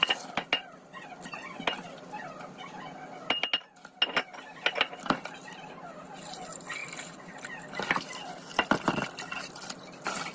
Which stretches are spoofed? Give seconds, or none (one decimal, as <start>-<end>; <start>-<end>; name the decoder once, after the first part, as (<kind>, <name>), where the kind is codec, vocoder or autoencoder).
none